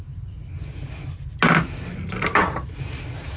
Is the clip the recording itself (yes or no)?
yes